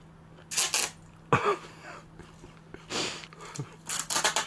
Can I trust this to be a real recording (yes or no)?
yes